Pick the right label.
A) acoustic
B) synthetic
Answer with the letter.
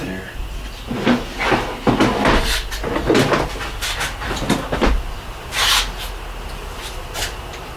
A